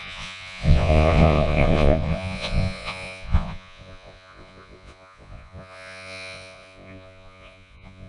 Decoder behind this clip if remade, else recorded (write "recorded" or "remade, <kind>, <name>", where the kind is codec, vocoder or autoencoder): remade, vocoder, Vocos